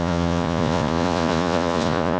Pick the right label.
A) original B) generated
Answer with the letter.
B